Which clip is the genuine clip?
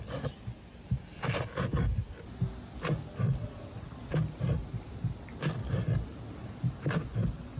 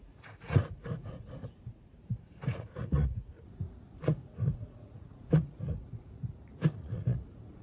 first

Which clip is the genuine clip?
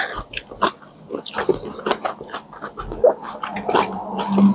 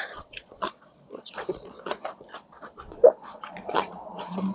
first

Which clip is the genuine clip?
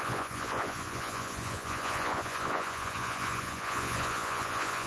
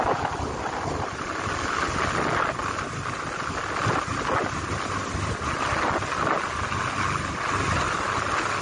second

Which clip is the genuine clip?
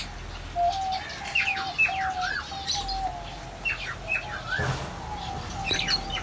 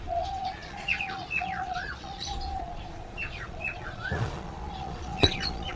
first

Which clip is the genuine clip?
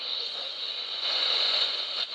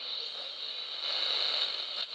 second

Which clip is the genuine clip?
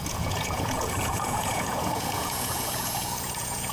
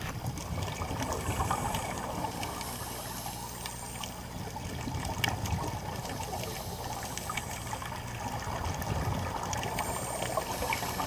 second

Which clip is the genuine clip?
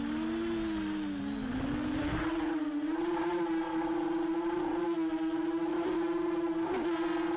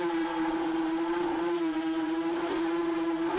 first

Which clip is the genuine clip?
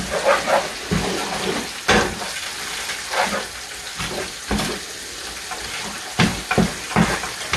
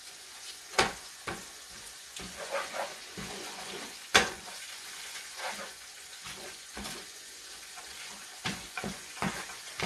first